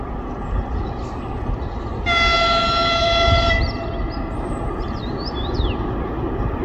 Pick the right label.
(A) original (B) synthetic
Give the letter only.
A